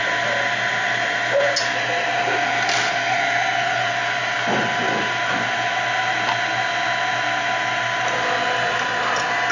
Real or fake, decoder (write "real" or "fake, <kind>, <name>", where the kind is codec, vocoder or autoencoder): real